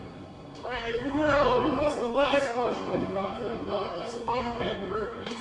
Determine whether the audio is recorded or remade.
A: remade